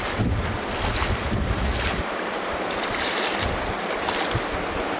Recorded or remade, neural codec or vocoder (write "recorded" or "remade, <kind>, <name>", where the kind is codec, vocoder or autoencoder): recorded